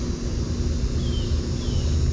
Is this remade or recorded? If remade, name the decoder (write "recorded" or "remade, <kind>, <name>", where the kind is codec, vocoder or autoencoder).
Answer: recorded